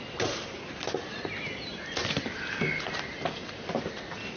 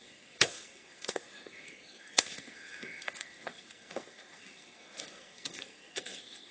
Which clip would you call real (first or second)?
first